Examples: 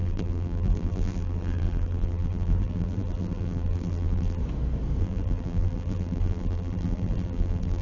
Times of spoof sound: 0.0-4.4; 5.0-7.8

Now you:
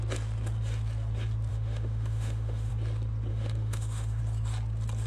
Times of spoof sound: 1.5-2.7; 3.3-4.2

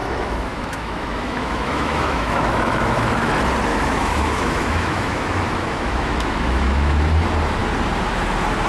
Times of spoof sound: 0.0-3.3; 3.7-7.0

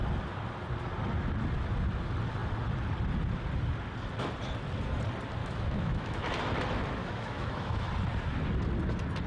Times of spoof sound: 5.4-6.4; 7.0-7.9

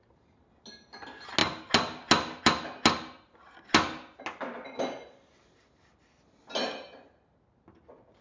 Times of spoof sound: none

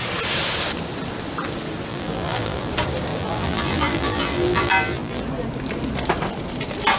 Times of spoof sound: 1.9-2.7; 3.1-5.2

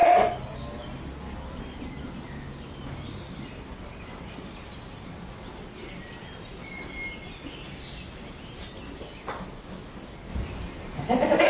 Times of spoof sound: 0.0-0.5; 10.3-11.5